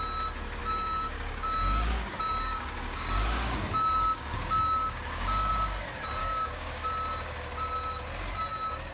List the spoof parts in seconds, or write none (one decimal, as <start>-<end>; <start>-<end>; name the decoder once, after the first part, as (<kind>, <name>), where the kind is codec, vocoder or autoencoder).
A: 0.6-5.5 (codec, DAC); 6.2-6.9